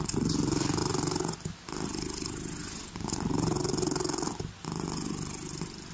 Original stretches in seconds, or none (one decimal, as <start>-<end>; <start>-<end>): 0.0-5.9